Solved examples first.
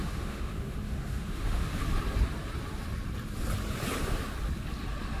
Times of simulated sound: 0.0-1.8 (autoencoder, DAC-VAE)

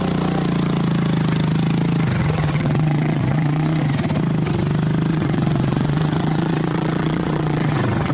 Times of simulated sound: 2.2-3.8 (vocoder, WaveNeXt); 5.1-8.1

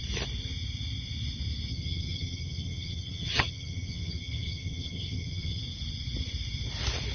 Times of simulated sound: 1.7-5.6 (vocoder, HiFi-GAN)

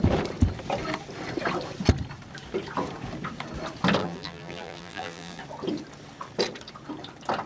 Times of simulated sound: 4.0-5.4 (vocoder, BigVGAN v2)

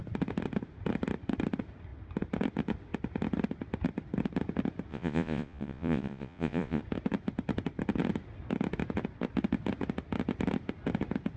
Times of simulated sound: 4.9-6.8 (vocoder, Vocos)

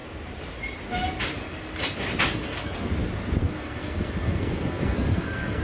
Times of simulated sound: 2.3-2.9 (codec, SNAC); 3.4-5.6

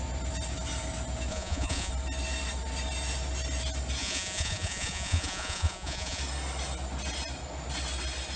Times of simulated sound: 1.3-1.9 (vocoder, Vocos); 4.0-6.2